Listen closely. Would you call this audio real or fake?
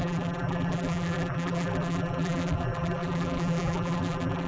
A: fake